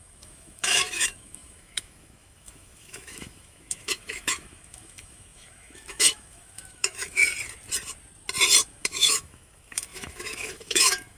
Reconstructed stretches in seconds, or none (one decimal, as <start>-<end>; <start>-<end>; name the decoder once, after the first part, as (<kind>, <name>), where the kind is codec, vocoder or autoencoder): 0.0-7.2 (autoencoder, DAC-VAE); 8.7-11.2